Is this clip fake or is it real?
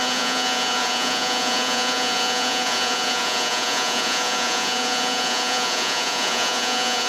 fake